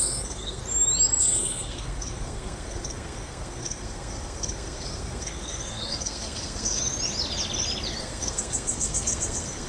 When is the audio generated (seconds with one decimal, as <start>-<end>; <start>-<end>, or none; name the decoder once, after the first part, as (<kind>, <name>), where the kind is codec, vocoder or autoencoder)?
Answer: 0.0-0.6 (codec, SNAC); 1.2-6.8; 8.0-9.7